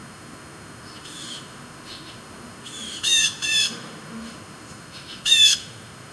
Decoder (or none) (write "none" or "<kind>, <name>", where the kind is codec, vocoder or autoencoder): autoencoder, DAC-VAE